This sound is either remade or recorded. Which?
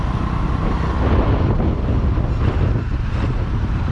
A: recorded